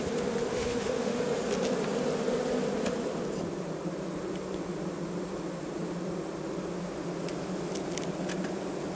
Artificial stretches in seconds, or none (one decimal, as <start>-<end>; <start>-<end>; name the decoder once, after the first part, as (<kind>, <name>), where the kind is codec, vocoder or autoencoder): 0.5-1.2 (autoencoder, DAC-VAE)